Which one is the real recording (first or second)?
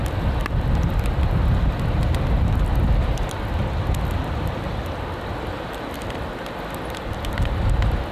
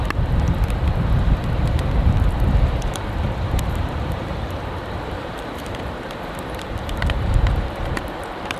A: first